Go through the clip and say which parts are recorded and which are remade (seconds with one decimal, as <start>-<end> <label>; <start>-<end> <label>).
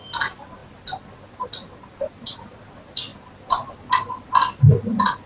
0.0-0.6 recorded; 0.6-2.7 remade; 2.7-3.1 recorded; 3.1-3.7 remade; 3.7-5.3 recorded